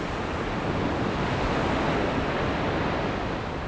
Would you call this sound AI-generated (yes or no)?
no